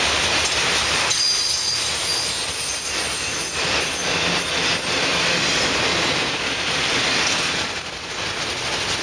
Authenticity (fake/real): real